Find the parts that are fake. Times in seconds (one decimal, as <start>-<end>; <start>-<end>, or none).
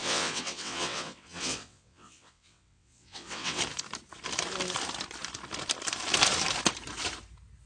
0.0-3.6